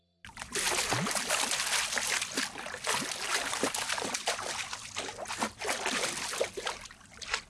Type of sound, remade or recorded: recorded